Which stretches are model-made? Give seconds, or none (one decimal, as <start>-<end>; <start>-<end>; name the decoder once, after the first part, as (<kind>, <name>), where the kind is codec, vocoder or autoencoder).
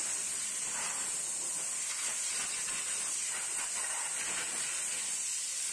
none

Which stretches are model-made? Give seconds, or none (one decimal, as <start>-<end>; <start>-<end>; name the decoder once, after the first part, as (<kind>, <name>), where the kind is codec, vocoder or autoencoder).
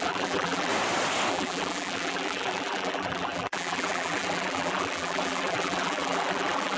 0.0-0.7 (vocoder, BigVGAN v2); 1.3-6.8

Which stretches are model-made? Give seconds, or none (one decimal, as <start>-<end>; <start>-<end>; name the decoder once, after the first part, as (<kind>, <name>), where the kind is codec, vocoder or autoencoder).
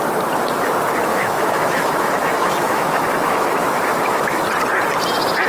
1.1-4.4 (autoencoder, DAC-VAE)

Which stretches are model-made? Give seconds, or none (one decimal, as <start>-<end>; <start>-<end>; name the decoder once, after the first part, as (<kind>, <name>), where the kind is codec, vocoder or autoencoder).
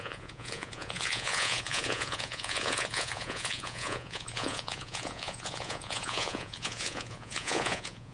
0.0-8.1 (vocoder, Vocos)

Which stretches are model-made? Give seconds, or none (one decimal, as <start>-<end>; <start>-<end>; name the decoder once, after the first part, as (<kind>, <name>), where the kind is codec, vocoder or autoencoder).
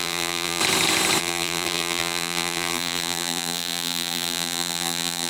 0.0-0.6 (vocoder, BigVGAN v2); 1.2-5.3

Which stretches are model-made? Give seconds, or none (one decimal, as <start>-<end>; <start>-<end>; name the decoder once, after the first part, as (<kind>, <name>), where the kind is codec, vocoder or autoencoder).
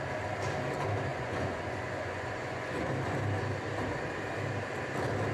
1.1-2.9 (vocoder, Vocos)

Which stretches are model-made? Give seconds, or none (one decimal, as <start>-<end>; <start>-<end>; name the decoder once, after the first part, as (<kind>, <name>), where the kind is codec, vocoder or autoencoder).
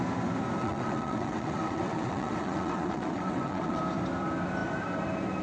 0.6-3.8 (vocoder, WaveNeXt)